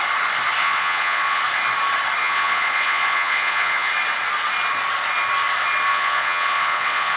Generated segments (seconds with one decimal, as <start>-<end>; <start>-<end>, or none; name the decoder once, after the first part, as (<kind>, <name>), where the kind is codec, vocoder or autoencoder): 0.6-1.4 (vocoder, Vocos); 2.2-3.9; 5.9-7.2